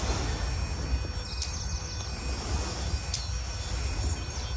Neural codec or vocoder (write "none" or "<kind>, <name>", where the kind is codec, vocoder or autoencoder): none